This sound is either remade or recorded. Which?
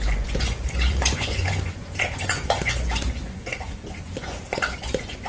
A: remade